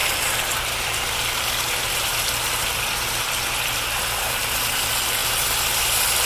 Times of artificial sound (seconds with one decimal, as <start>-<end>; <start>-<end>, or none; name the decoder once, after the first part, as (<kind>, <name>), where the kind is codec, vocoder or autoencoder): 0.0-3.8 (vocoder, BigVGAN v2); 5.2-6.3